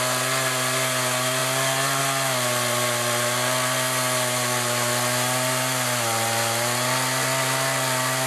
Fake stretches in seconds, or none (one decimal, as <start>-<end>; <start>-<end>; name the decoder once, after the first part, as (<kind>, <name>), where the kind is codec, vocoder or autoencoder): none